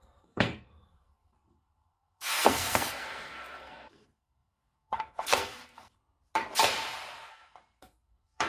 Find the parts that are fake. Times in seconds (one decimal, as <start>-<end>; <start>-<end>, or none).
0.0-6.0; 7.3-8.5